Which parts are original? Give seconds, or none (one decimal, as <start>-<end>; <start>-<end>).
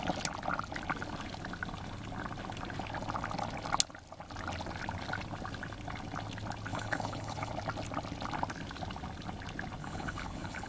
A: 0.0-6.7; 7.5-9.8